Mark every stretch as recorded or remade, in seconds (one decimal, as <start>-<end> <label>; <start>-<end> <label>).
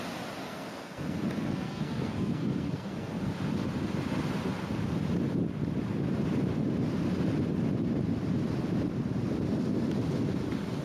0.0-0.4 recorded; 0.4-3.3 remade; 3.3-10.8 recorded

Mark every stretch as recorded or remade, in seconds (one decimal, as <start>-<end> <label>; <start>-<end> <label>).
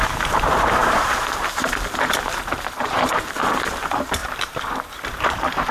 0.0-5.7 remade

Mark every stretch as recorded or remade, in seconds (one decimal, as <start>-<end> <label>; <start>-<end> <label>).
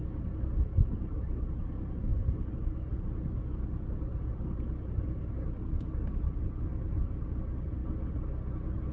0.0-8.9 recorded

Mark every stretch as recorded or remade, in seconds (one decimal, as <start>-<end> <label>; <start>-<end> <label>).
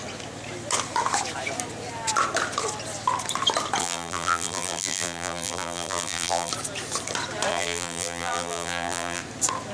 0.0-3.8 recorded; 3.8-6.5 remade; 6.5-7.5 recorded; 7.5-9.2 remade; 9.2-9.7 recorded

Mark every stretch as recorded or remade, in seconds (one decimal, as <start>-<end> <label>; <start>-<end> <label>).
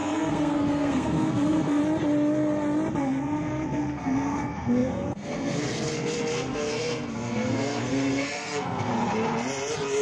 0.0-1.8 remade; 1.8-3.0 recorded; 3.0-8.9 remade; 8.9-10.0 recorded